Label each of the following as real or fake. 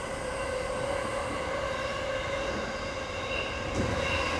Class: real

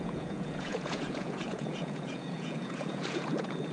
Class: fake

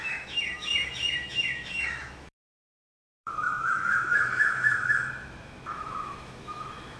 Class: fake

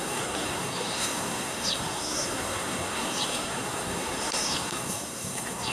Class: fake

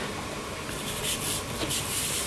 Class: real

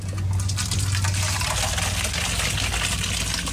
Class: real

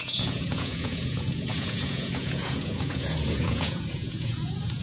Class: fake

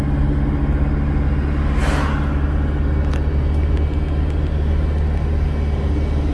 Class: real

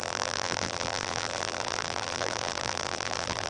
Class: fake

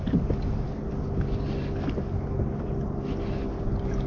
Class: real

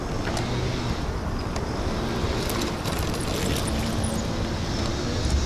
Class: real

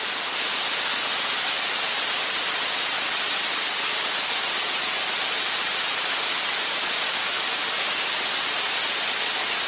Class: real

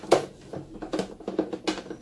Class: real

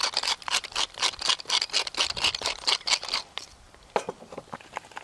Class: real